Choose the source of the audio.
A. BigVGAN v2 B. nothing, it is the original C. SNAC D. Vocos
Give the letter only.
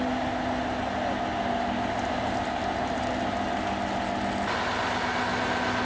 B